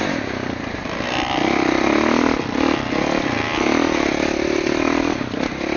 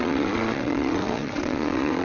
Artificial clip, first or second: second